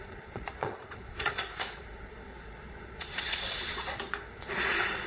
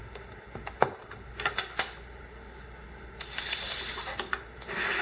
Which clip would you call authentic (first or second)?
second